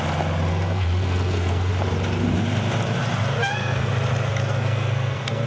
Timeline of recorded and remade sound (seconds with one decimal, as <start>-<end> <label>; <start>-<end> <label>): 0.0-0.5 recorded; 0.5-1.7 remade; 1.7-3.4 recorded; 3.4-3.9 remade; 3.9-4.4 recorded; 4.4-5.5 remade